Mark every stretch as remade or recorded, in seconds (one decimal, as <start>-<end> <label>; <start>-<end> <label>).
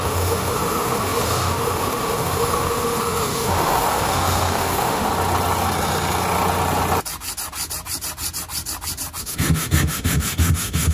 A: 0.0-5.1 remade; 5.1-9.2 recorded; 9.2-10.9 remade